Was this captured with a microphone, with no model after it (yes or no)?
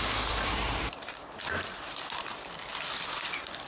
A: no